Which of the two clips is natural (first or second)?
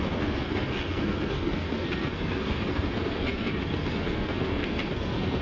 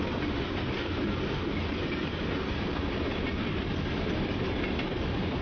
second